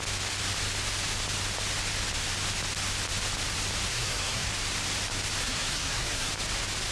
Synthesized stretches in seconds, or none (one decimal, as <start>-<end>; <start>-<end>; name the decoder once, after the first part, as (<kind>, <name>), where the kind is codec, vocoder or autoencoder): 3.9-4.5 (codec, SNAC); 5.4-6.3